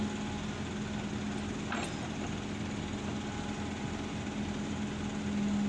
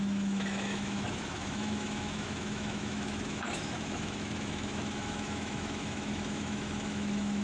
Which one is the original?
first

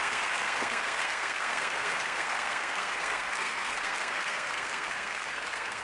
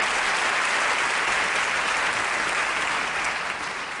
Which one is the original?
second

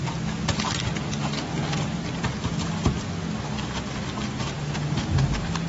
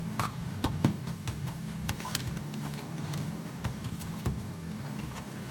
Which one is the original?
first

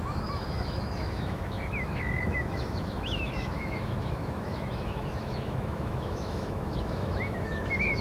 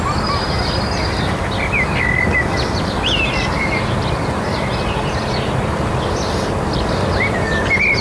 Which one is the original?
second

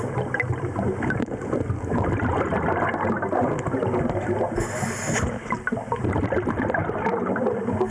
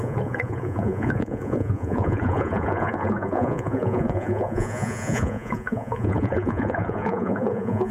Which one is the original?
first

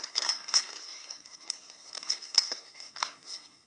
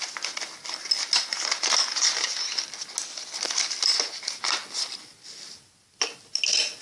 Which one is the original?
second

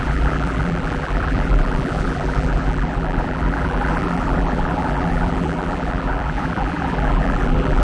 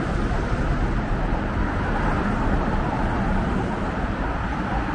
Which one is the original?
second